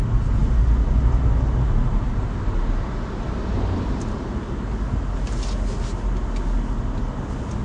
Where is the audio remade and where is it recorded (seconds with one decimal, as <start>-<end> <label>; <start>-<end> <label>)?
0.0-7.6 recorded